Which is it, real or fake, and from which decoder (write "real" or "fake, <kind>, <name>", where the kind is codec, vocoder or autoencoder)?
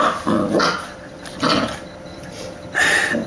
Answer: real